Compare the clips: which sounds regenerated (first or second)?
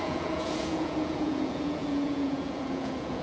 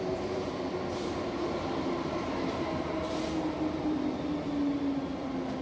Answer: first